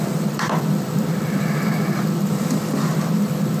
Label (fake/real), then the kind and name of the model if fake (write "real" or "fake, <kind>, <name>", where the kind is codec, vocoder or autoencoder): fake, vocoder, BigVGAN v2